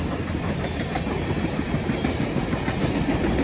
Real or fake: real